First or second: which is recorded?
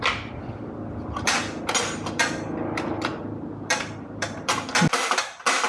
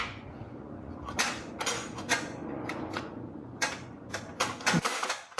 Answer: first